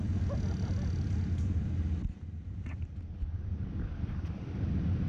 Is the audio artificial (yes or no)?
no